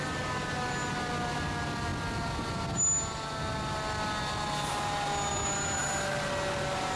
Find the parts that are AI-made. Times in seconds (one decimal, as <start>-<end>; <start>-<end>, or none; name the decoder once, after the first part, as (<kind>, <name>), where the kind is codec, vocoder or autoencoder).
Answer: none